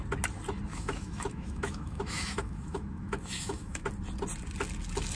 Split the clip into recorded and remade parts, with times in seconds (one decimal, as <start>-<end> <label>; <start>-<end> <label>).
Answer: 0.0-0.7 recorded; 0.7-3.8 remade; 3.8-5.1 recorded